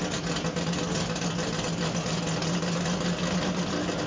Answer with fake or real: real